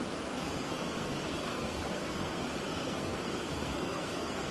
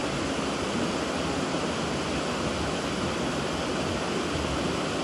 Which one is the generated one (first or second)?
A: first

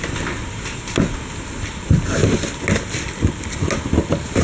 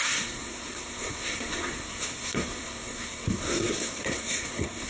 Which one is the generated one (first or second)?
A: second